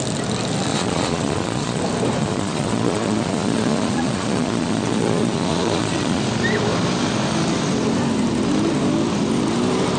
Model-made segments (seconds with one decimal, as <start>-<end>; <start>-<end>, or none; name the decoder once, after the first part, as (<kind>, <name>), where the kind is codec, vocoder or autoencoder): 0.7-1.8 (vocoder, Vocos); 2.2-6.2